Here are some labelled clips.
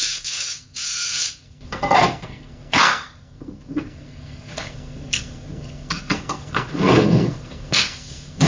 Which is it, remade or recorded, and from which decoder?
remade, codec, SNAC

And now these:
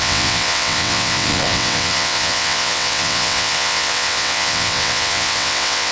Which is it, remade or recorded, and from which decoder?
remade, vocoder, WaveNeXt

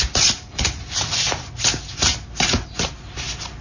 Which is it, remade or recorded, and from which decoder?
recorded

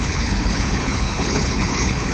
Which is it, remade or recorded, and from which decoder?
remade, codec, HILCodec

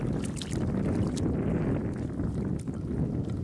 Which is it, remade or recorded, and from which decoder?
recorded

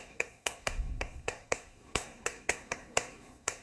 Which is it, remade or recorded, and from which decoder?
remade, codec, SNAC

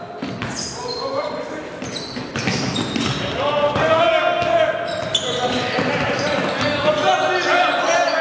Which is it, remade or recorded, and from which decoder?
recorded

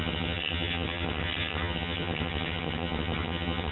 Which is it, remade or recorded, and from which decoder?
remade, vocoder, HiFi-GAN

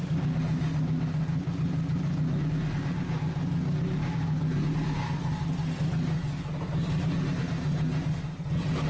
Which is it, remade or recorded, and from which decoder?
recorded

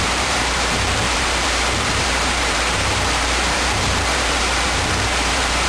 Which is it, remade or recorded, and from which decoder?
remade, vocoder, BigVGAN v2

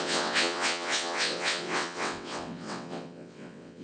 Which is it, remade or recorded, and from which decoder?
remade, vocoder, WaveNeXt